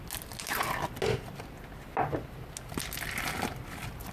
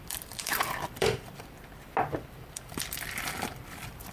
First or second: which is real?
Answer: first